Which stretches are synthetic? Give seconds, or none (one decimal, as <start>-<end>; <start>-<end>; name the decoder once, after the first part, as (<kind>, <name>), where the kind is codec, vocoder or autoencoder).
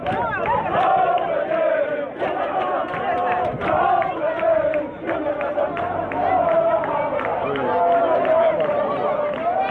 none